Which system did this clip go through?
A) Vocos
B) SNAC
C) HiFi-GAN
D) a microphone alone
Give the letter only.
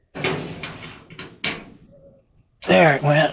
D